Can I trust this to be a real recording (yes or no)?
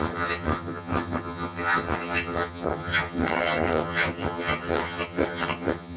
no